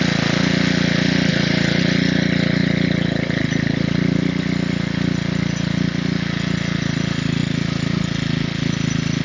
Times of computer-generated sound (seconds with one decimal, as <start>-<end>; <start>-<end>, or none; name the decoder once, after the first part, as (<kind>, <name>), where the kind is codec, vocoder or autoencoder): 1.3-1.8 (vocoder, BigVGAN v2); 7.4-8.0